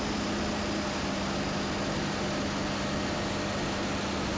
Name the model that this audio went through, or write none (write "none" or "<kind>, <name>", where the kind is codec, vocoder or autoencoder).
none